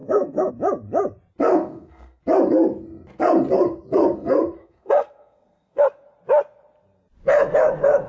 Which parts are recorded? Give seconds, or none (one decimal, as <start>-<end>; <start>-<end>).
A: 0.5-1.5; 2.2-4.6; 5.8-8.1